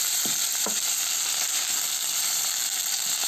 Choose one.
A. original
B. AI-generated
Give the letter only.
B